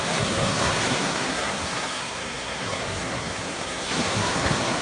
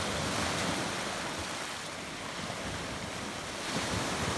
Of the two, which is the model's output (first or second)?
first